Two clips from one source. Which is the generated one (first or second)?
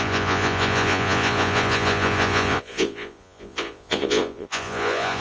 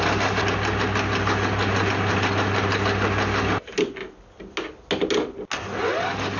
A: first